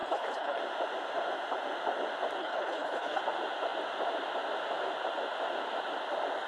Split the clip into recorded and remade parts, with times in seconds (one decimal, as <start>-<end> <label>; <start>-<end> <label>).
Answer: 0.0-0.6 remade; 0.6-2.4 recorded; 2.4-3.2 remade; 3.2-6.5 recorded